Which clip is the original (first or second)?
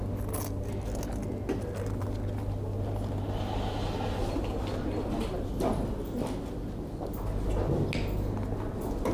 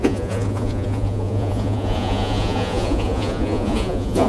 first